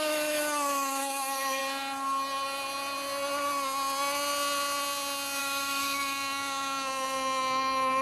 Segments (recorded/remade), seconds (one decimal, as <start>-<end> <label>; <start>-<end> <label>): 0.0-1.6 remade; 1.6-5.4 recorded; 5.4-8.0 remade

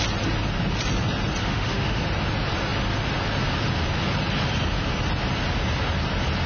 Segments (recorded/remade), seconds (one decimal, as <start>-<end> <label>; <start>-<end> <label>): 0.0-1.4 recorded; 1.4-2.0 remade; 2.0-6.5 recorded

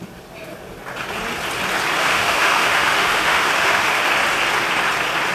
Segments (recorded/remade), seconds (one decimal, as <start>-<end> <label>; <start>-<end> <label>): 0.0-2.0 recorded; 2.0-4.0 remade; 4.0-5.3 recorded

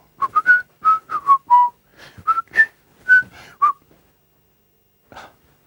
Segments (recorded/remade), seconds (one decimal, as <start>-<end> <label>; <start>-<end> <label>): 0.0-5.7 recorded

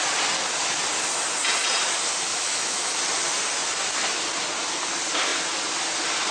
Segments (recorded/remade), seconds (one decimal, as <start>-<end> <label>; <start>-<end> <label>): 0.0-2.3 recorded; 2.3-3.0 remade; 3.0-6.3 recorded